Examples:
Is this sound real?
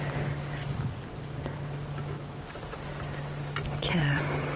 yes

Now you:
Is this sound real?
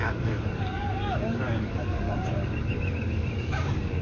no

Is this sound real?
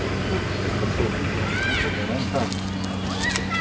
yes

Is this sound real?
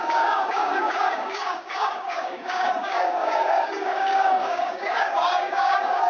no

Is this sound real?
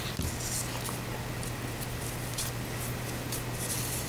yes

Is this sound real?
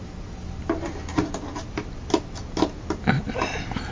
yes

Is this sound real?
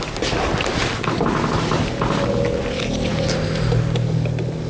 yes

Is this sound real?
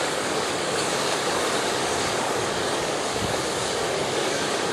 no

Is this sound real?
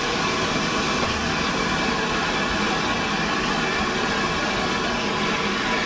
yes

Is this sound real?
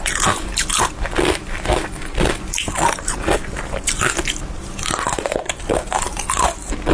yes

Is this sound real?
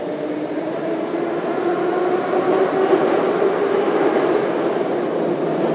yes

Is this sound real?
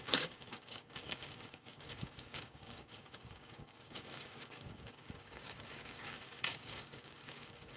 no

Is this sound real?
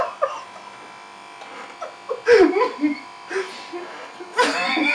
yes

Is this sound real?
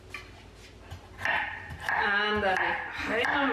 yes